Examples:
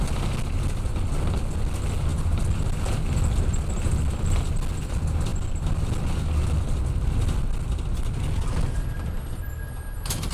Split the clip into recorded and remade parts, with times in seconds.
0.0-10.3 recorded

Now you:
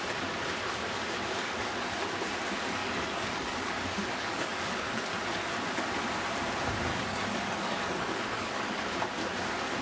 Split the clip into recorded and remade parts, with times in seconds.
0.0-1.4 recorded; 1.4-1.9 remade; 1.9-2.8 recorded; 2.8-5.1 remade; 5.1-6.9 recorded; 6.9-8.8 remade; 8.8-9.8 recorded

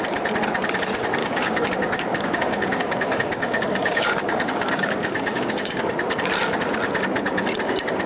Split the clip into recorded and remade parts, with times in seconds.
0.0-1.2 recorded; 1.2-1.7 remade; 1.7-2.1 recorded; 2.1-5.9 remade; 5.9-8.1 recorded

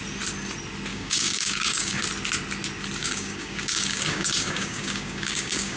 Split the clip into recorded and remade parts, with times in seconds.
0.0-0.9 recorded; 0.9-2.0 remade; 2.0-3.0 recorded; 3.0-5.8 remade

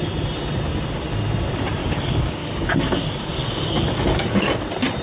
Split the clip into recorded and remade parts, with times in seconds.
0.0-1.8 recorded; 1.8-4.3 remade; 4.3-5.0 recorded

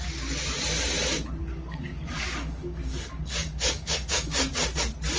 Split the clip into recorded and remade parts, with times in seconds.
0.0-1.4 recorded; 1.4-4.5 remade; 4.5-5.2 recorded